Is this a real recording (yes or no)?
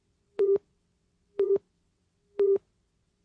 no